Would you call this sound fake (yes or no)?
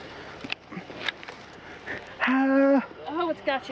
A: no